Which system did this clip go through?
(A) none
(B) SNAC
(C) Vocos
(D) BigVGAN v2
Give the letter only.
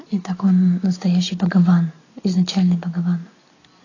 A